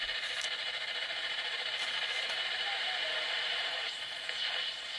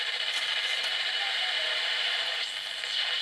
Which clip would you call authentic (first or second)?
second